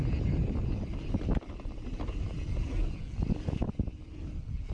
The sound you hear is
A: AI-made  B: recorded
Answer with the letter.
B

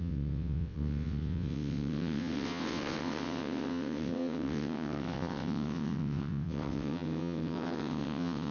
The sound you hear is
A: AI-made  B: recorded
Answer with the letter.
A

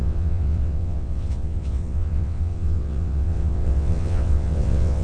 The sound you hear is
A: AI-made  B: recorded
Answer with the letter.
A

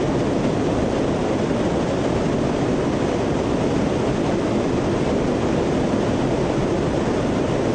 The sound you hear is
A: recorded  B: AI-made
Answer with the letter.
A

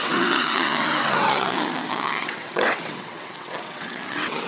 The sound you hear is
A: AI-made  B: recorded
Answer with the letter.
A